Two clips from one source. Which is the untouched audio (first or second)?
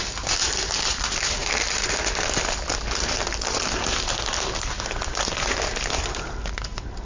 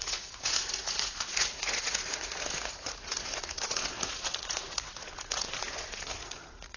first